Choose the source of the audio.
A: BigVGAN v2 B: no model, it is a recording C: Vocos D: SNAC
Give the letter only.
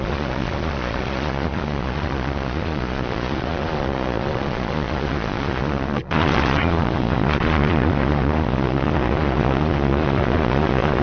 C